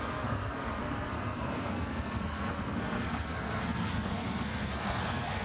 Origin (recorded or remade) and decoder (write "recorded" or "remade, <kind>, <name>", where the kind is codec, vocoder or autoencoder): remade, codec, SNAC